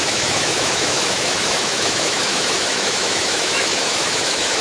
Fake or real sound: fake